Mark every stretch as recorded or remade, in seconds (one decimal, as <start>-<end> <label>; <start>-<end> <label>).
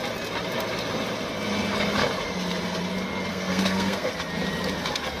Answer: 0.0-3.3 recorded; 3.3-4.1 remade; 4.1-5.2 recorded